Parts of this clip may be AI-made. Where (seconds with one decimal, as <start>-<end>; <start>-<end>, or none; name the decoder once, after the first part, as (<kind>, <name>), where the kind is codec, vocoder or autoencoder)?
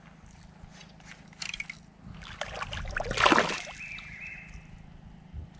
none